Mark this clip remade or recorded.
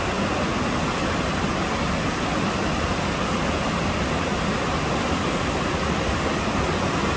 recorded